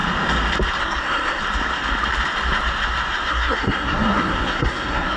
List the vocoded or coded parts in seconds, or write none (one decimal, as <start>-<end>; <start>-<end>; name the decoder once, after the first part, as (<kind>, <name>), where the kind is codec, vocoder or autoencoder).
0.8-1.4 (codec, SNAC); 3.3-5.2